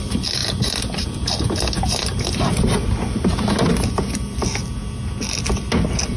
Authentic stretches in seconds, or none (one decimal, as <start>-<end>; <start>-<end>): 0.0-6.2